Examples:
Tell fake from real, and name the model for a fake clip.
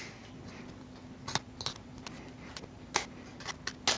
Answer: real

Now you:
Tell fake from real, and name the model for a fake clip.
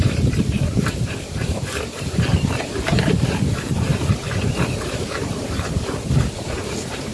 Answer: fake, vocoder, BigVGAN v2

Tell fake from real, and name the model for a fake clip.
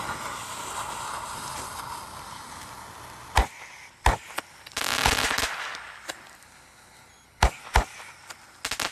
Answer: real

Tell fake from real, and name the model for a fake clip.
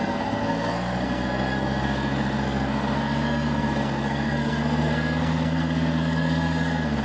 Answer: fake, codec, SNAC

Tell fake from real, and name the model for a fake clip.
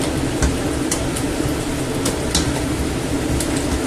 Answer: real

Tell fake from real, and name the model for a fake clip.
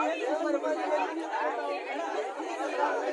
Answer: real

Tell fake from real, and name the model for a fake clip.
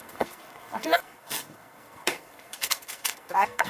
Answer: fake, codec, SNAC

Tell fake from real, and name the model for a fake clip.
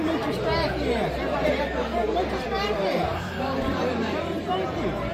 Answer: fake, vocoder, BigVGAN v2